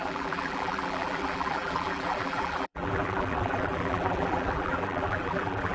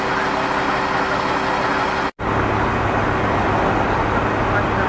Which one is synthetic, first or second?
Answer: first